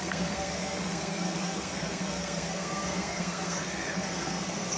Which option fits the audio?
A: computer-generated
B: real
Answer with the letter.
A